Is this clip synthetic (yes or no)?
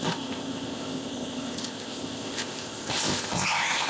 yes